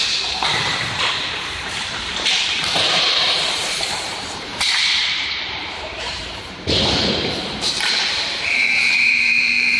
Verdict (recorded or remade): remade